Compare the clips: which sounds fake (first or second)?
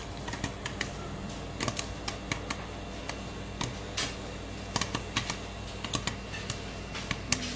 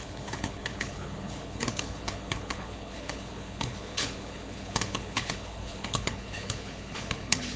second